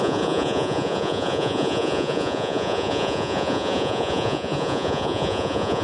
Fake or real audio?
fake